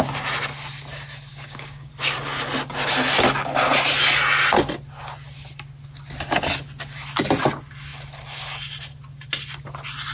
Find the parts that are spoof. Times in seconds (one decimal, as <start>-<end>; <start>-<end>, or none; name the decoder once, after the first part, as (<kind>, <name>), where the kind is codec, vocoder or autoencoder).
1.3-1.9 (codec, DAC)